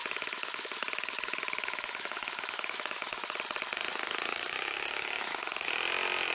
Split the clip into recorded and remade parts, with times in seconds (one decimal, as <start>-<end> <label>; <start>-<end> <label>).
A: 0.0-3.4 remade; 3.4-4.3 recorded; 4.3-5.7 remade; 5.7-6.3 recorded